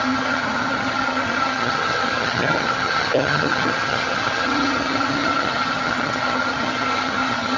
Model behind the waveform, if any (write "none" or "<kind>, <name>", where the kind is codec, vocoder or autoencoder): vocoder, HiFi-GAN